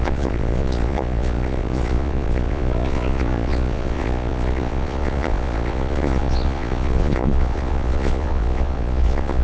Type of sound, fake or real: fake